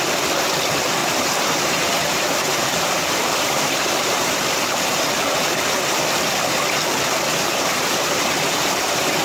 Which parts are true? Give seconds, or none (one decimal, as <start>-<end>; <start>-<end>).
0.0-1.0; 6.0-7.3